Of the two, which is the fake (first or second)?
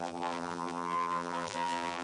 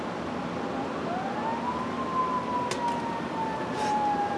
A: first